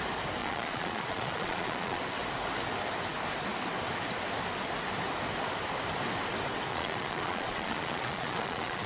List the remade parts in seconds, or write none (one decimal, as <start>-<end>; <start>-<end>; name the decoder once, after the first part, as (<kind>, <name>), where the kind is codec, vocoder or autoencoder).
0.4-2.0 (vocoder, Vocos); 6.7-8.9